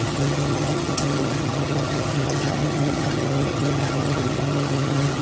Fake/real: fake